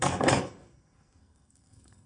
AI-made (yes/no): yes